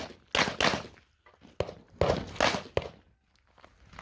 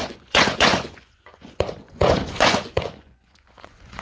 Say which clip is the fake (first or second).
second